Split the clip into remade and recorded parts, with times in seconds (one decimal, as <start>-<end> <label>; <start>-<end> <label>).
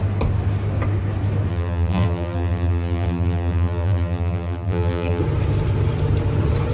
0.0-1.5 recorded; 1.5-5.2 remade; 5.2-6.7 recorded